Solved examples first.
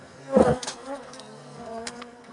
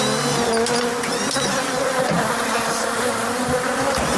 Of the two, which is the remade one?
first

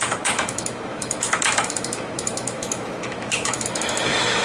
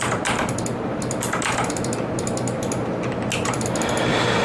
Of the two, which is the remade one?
first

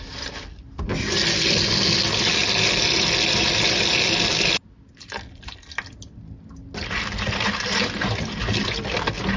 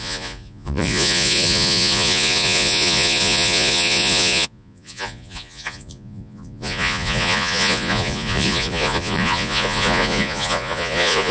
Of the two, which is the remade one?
second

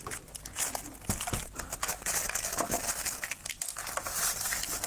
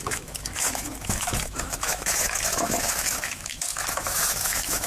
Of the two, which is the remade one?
second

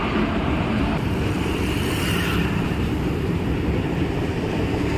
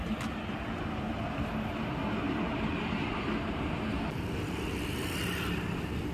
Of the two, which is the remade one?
first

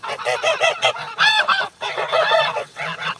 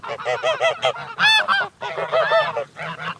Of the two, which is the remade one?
first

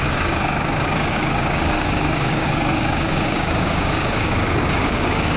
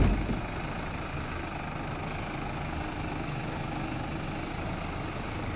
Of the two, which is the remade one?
first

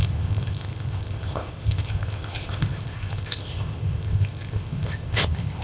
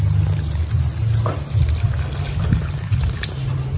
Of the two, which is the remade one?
first